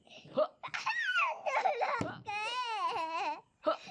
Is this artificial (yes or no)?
no